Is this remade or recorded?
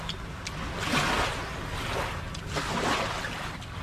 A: recorded